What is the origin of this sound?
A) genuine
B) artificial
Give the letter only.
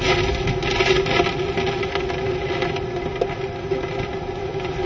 A